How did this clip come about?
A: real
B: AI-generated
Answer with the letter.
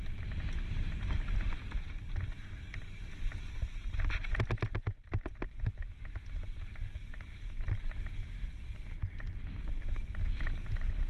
A